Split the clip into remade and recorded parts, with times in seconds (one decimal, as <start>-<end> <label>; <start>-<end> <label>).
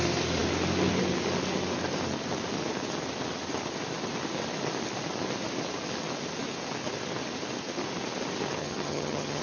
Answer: 0.0-8.6 recorded; 8.6-9.4 remade